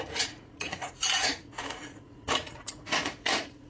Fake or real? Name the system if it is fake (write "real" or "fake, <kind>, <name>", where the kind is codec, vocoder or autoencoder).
fake, vocoder, Vocos